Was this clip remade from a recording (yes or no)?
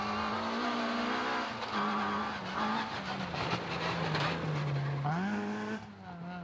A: no